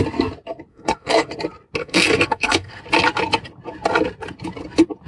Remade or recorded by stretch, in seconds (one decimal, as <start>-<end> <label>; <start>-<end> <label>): 0.0-0.7 recorded; 0.7-1.3 remade; 1.3-1.8 recorded; 1.8-2.8 remade; 2.8-5.1 recorded